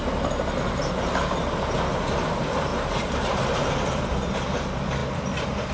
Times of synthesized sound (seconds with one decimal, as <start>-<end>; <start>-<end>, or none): 2.7-3.7